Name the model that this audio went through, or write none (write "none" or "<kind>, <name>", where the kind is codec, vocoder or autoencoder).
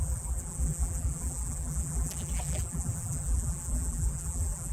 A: vocoder, BigVGAN v2